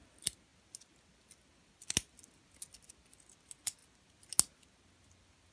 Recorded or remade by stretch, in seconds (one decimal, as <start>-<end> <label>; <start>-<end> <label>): 0.0-5.5 recorded

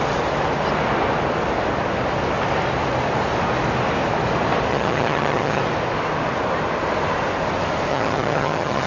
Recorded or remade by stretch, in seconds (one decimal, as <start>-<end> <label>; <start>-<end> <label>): 0.0-4.7 recorded; 4.7-5.6 remade; 5.6-7.9 recorded; 7.9-8.9 remade

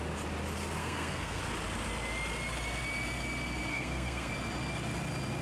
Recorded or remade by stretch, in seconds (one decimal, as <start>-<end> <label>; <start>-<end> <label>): 0.0-0.8 recorded; 0.8-1.4 remade; 1.4-3.7 recorded; 3.7-4.3 remade; 4.3-5.4 recorded

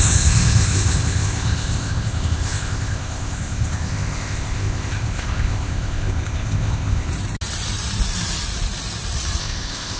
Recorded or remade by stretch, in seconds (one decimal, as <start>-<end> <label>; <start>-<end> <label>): 0.0-7.1 remade; 7.1-9.4 recorded; 9.4-10.0 remade

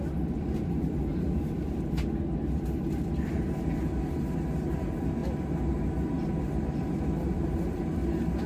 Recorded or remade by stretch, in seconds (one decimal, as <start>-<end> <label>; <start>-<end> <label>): 0.0-8.5 recorded

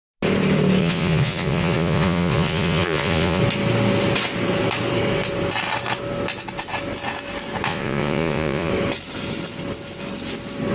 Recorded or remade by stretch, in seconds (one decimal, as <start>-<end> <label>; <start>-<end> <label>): 0.0-0.8 recorded; 0.8-3.4 remade; 3.4-7.7 recorded; 7.7-8.7 remade; 8.7-10.7 recorded

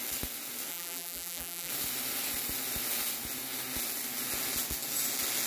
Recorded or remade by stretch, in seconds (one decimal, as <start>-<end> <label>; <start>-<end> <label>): 0.0-0.7 recorded; 0.7-1.7 remade; 1.7-5.5 recorded

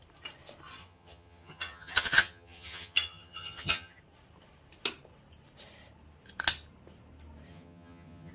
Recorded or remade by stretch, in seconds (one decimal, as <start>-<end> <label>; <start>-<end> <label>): 0.0-0.8 recorded; 0.8-4.0 remade; 4.0-7.5 recorded; 7.5-8.3 remade